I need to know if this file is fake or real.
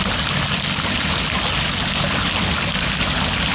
real